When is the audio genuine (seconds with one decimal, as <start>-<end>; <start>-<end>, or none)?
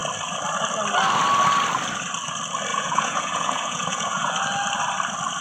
0.0-2.7; 4.3-5.4